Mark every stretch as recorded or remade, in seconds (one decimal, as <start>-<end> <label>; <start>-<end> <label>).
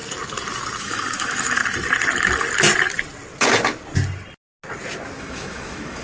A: 0.0-0.8 recorded; 0.8-1.6 remade; 1.6-5.2 recorded; 5.2-6.0 remade